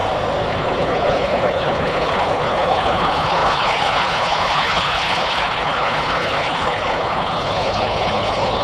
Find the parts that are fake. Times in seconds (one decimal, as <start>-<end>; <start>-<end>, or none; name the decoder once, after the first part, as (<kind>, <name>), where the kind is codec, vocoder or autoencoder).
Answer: 0.5-8.6 (codec, HILCodec)